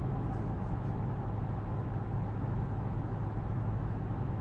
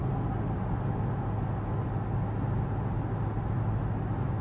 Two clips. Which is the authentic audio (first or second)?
second